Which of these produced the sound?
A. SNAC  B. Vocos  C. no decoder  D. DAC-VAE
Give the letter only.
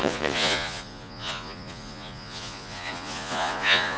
B